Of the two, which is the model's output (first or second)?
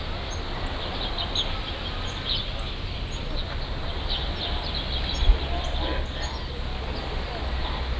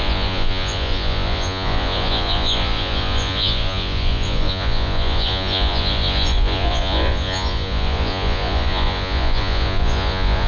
second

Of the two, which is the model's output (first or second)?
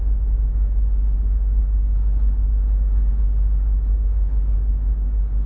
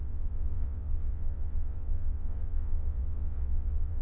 second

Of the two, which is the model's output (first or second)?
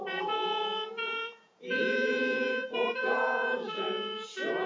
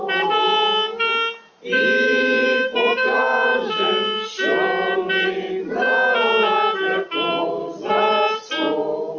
first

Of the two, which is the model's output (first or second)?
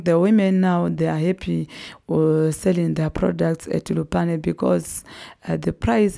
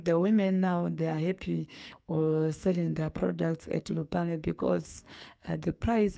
second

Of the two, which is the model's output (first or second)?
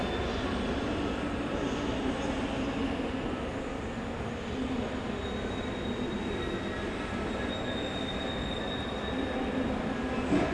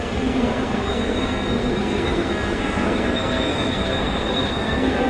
second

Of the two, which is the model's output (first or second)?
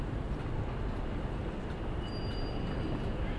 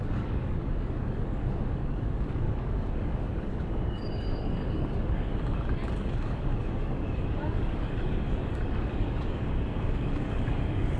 second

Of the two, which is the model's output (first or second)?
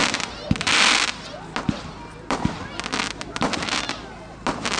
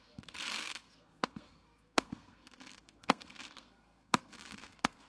second